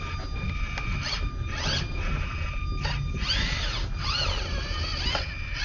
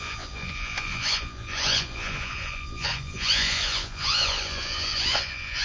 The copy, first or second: second